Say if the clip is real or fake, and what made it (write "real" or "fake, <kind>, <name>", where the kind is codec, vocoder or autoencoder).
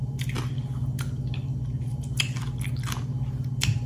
real